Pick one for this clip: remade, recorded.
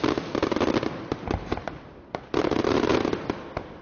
recorded